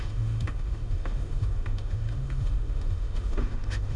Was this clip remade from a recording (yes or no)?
yes